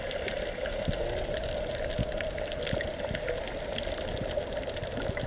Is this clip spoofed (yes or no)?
no